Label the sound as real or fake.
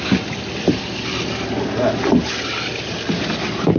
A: real